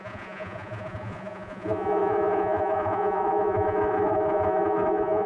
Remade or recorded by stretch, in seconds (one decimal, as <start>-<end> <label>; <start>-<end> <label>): 0.0-5.3 remade